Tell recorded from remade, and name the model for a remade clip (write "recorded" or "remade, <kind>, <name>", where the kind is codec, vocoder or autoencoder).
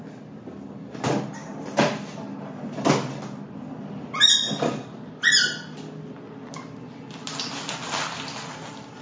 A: recorded